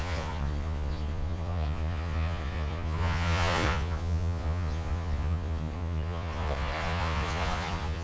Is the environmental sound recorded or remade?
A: remade